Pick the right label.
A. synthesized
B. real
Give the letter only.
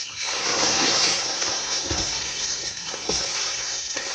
A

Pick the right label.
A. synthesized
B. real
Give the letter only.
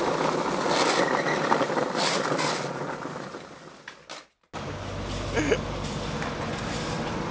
B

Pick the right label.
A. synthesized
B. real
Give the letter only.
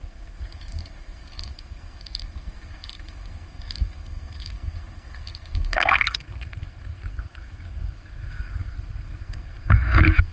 A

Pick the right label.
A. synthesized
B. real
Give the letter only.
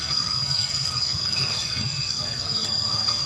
A